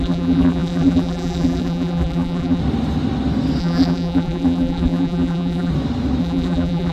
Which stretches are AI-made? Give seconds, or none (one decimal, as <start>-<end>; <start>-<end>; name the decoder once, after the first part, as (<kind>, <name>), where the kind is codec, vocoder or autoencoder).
0.0-2.6 (vocoder, BigVGAN v2); 3.6-5.7; 6.2-6.9